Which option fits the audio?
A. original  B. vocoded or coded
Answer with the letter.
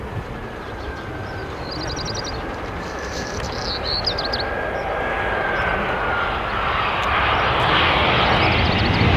A